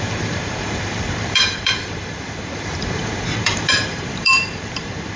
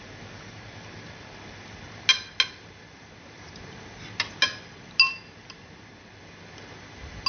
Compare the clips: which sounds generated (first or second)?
first